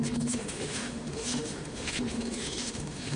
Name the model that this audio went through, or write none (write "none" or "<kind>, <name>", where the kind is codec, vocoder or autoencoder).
autoencoder, DAC-VAE